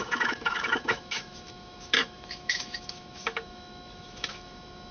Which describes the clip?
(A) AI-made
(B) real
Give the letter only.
A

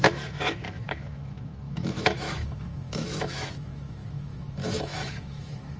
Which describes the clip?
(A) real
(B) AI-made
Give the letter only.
B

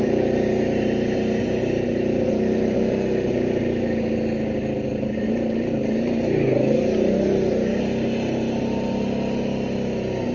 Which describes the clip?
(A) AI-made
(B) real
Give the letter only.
B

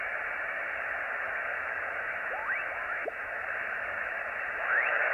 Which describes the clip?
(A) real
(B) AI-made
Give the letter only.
B